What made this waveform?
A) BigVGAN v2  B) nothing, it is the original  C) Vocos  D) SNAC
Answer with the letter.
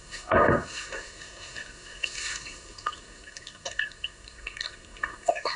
D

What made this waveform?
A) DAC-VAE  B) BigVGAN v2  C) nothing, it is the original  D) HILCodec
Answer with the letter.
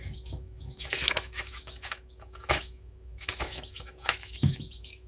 A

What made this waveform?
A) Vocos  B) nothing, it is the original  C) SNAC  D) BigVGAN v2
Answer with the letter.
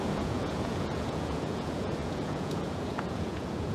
A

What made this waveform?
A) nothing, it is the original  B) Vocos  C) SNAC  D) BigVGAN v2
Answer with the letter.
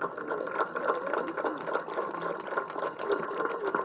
A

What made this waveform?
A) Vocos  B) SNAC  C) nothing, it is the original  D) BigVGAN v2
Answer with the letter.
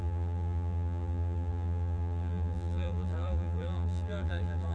D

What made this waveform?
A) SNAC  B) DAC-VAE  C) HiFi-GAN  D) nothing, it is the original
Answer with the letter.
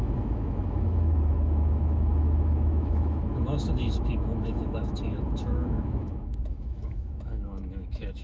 B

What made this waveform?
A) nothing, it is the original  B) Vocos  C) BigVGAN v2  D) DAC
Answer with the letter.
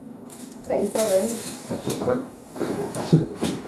D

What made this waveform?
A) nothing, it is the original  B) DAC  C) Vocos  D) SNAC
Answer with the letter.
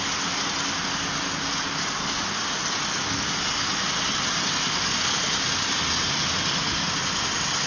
A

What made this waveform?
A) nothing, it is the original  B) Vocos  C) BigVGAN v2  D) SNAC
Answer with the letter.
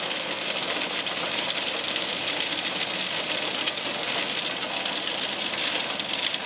A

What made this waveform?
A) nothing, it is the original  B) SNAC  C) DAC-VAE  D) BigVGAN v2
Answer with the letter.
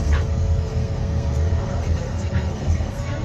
B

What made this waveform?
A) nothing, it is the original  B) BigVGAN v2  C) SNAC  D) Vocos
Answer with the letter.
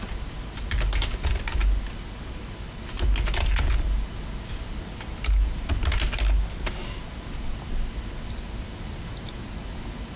A